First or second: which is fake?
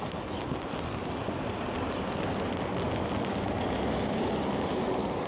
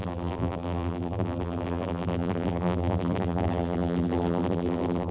second